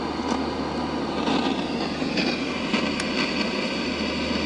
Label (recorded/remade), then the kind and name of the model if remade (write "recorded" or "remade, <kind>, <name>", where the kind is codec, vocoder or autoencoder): recorded